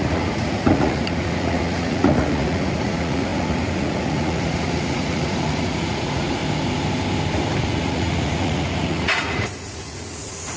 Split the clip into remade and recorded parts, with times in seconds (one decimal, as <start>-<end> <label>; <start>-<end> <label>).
0.0-6.4 remade; 6.4-7.6 recorded; 7.6-10.6 remade